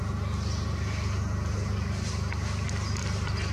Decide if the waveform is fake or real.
real